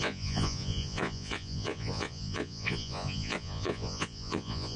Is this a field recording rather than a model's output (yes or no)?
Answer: no